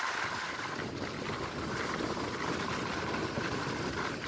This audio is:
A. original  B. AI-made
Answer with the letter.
A